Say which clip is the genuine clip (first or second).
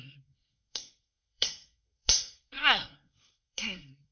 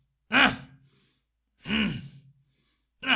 second